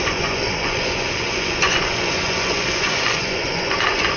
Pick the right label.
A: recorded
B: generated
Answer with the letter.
B